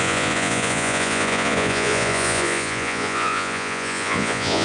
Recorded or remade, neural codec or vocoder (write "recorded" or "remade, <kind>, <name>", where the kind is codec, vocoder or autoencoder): remade, vocoder, Vocos